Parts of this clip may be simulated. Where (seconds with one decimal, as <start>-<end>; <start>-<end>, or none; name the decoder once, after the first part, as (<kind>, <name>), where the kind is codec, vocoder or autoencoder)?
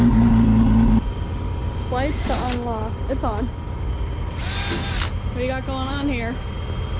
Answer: none